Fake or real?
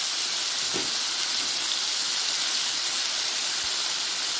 real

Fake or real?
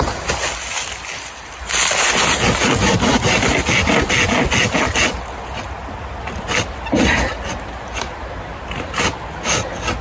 real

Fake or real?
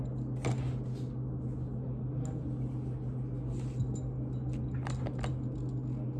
real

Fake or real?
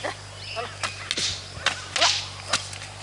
real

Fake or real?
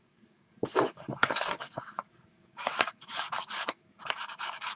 fake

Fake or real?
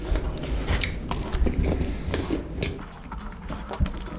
real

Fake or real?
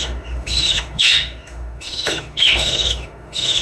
fake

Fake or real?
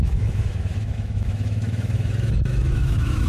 fake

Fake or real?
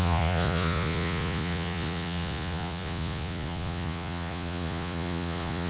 fake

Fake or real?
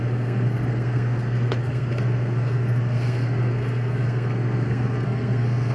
fake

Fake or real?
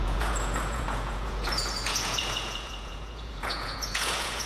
fake